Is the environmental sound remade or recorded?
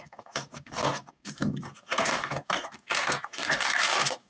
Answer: remade